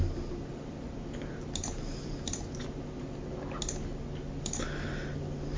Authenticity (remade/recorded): recorded